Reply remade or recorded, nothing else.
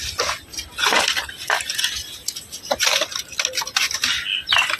recorded